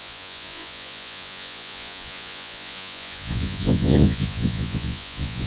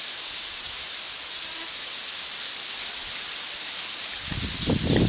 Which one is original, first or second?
second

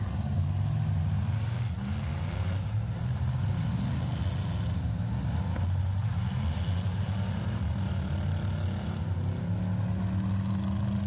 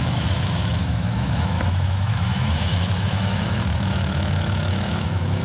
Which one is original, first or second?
first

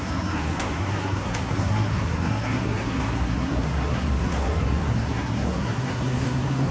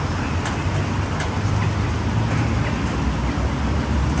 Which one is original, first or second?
second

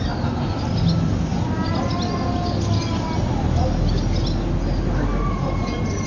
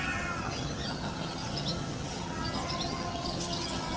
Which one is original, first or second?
first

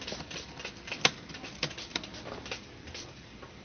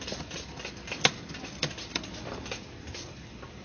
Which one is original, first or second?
first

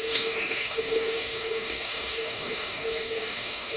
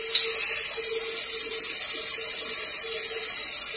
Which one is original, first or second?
second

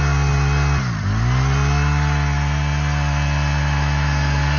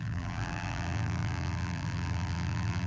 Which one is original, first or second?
first